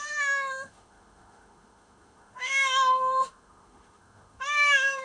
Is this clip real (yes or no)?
no